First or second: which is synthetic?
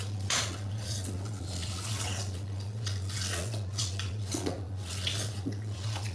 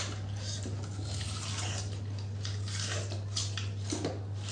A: first